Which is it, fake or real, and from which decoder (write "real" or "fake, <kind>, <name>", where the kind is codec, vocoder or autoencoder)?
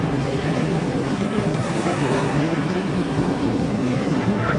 fake, codec, SNAC